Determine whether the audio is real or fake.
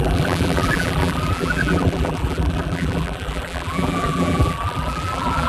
fake